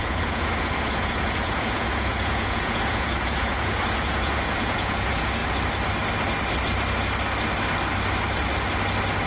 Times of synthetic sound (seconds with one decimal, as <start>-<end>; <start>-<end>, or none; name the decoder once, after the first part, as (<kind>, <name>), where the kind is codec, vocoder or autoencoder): 0.0-5.4 (vocoder, Vocos)